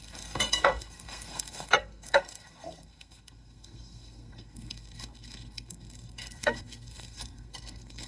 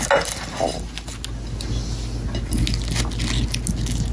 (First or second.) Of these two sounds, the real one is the second